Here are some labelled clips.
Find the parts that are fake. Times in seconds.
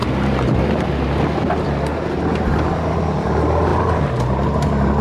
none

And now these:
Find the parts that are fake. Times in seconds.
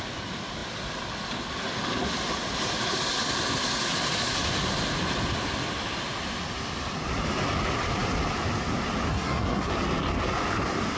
9.1-9.7 (codec, SNAC)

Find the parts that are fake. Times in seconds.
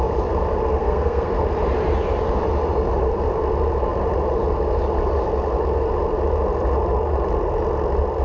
0.8-1.3 (codec, SNAC)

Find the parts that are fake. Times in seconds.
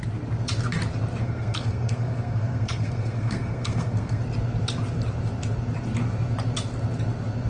1.2-4.2 (codec, SNAC)